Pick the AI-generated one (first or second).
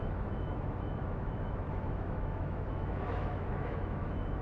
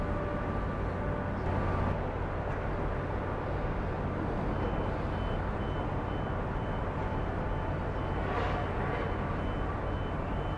first